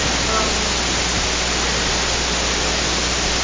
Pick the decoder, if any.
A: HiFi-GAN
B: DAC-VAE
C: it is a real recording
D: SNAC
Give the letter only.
C